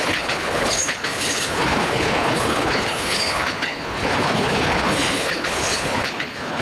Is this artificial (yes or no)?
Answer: yes